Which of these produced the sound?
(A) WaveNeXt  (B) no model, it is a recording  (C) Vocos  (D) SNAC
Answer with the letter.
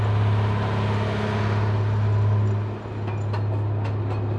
B